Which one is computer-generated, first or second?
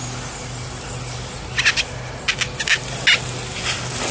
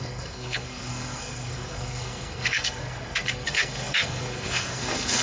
second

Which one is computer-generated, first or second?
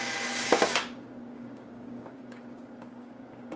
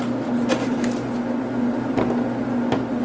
first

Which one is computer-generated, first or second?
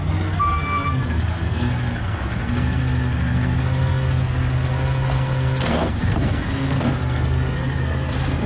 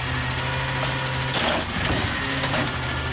first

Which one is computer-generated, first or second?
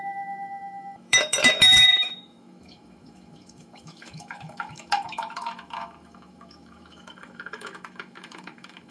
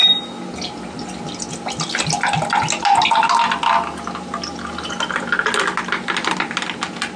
first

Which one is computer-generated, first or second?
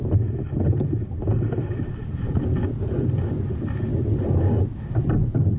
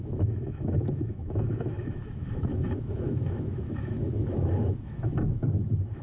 second